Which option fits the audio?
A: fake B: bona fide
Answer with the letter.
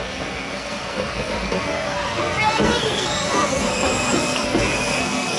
A